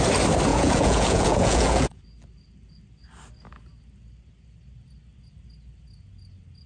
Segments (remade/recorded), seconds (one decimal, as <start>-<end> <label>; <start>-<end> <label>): 0.0-0.5 recorded; 0.5-2.0 remade; 2.0-6.7 recorded